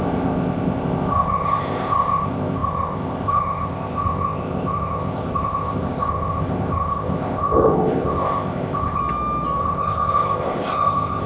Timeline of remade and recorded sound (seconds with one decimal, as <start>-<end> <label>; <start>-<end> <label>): 0.0-9.0 remade; 9.0-9.6 recorded; 9.6-11.3 remade